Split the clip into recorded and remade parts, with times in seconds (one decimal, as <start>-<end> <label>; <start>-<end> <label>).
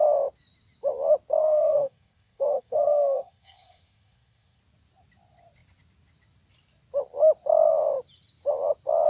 0.0-1.4 recorded; 1.4-4.6 remade; 4.6-9.1 recorded